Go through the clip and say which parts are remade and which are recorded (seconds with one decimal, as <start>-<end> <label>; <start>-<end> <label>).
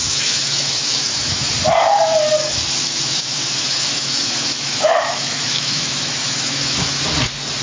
0.0-1.5 remade; 1.5-2.8 recorded; 2.8-7.0 remade; 7.0-7.6 recorded